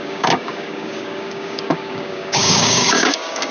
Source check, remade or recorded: remade